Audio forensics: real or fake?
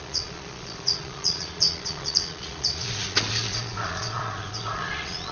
fake